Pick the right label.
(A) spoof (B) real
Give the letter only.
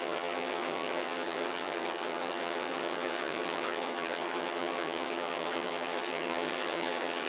A